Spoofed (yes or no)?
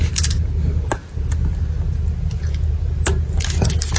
no